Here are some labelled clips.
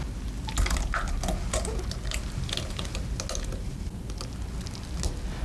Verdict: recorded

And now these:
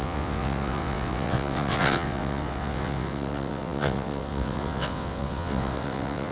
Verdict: remade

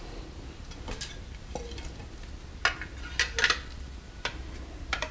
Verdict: recorded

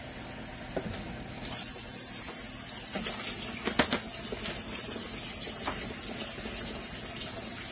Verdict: recorded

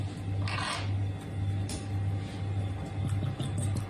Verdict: recorded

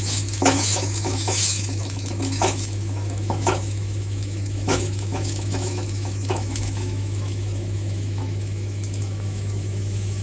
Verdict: remade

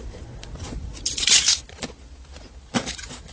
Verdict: remade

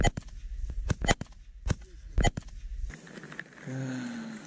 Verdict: recorded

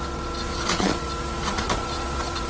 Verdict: remade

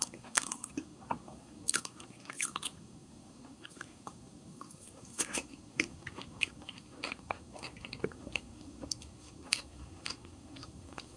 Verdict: remade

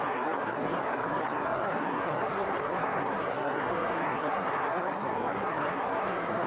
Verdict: remade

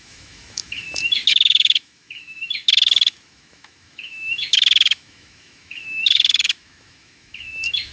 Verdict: remade